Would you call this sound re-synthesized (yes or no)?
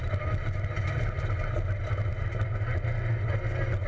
no